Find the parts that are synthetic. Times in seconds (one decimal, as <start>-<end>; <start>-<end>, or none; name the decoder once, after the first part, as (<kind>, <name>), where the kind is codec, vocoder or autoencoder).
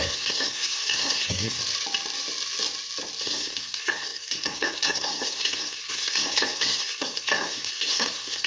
0.0-1.6 (codec, SNAC); 3.2-8.5